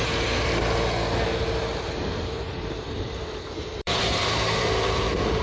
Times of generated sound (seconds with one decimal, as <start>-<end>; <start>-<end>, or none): 1.7-4.6